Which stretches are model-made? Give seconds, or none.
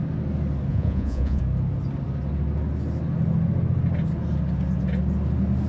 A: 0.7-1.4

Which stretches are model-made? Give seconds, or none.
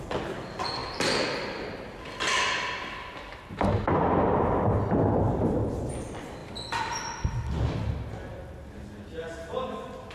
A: none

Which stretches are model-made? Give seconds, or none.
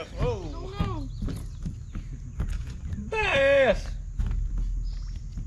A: 2.6-3.7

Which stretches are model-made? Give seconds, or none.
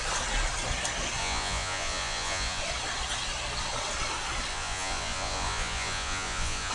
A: 1.2-2.6; 4.5-6.7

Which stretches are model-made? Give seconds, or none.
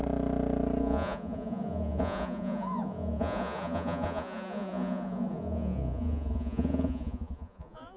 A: 0.8-8.0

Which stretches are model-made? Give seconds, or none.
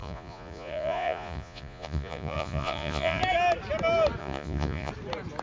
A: 0.0-3.2; 4.2-4.9